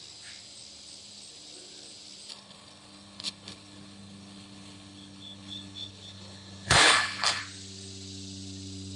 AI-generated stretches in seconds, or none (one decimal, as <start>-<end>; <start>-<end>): 2.3-7.4